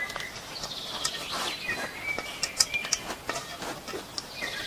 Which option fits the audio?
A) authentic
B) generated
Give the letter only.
A